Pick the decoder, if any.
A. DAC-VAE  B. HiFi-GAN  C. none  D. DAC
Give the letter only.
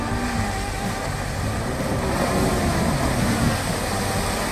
C